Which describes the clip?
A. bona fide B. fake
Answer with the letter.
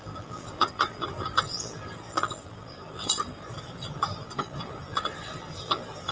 B